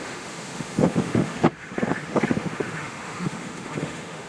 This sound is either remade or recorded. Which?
remade